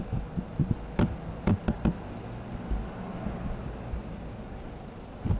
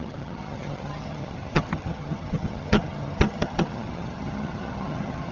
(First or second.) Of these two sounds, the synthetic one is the second